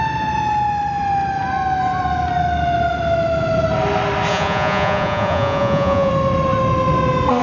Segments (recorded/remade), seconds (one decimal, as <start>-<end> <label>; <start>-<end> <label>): 0.0-4.3 recorded; 4.3-6.1 remade; 6.1-7.4 recorded